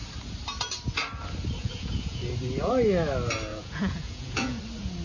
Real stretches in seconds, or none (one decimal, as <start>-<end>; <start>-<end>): 0.0-1.6; 2.2-3.5; 4.6-5.0